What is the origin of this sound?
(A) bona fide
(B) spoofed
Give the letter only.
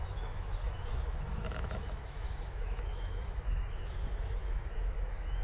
B